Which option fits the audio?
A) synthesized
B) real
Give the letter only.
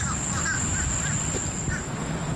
B